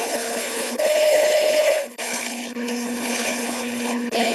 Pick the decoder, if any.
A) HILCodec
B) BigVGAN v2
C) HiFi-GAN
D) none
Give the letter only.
A